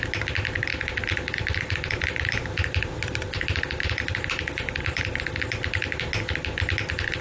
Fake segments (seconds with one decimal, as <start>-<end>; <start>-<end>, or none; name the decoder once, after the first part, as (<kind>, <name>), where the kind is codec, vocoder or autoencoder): 0.7-5.0 (vocoder, BigVGAN v2)